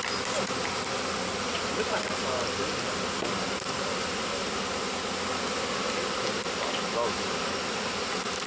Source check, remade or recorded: recorded